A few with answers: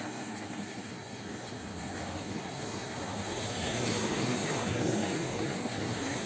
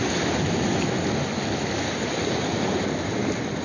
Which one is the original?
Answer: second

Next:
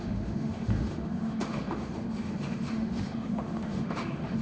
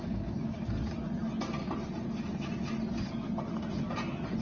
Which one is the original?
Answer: second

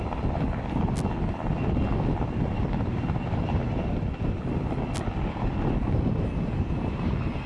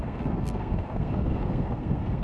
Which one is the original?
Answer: first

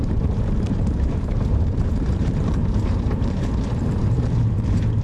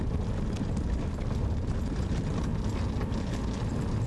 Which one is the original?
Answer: second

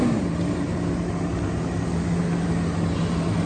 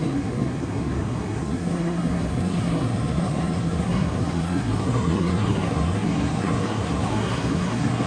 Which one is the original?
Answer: first